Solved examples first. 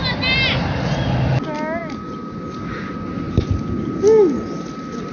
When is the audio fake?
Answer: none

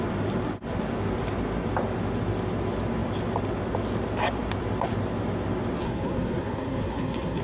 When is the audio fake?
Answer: 5.8-7.4 (codec, SNAC)

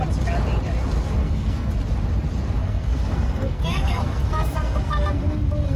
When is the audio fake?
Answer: 1.2-1.7 (codec, SNAC); 2.6-5.8

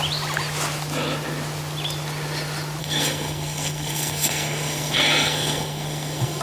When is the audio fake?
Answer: 2.8-6.4 (codec, SNAC)

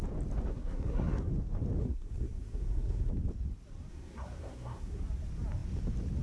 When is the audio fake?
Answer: 0.5-1.3 (codec, SNAC); 1.8-3.1; 3.9-5.0

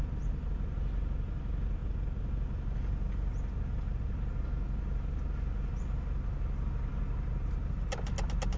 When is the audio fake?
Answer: none

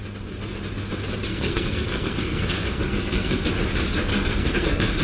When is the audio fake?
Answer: 1.3-3.5 (codec, SNAC); 4.1-5.0